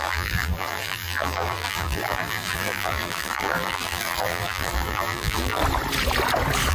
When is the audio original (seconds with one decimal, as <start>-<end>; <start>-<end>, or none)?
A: 5.6-6.7